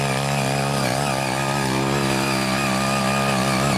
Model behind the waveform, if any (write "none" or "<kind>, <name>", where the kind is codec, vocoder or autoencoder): none